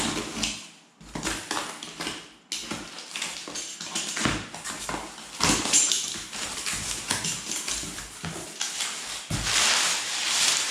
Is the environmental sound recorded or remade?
recorded